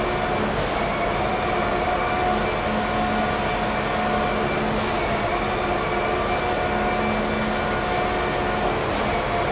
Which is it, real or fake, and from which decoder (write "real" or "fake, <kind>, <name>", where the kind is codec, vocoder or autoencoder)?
real